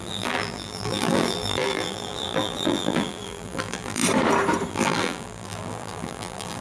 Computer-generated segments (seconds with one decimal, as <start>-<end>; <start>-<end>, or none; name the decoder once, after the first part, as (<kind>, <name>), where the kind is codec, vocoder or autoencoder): 0.0-4.0 (vocoder, BigVGAN v2); 4.7-6.6